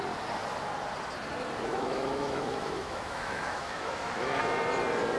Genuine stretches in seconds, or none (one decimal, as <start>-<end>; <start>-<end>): 0.0-1.7; 4.4-5.2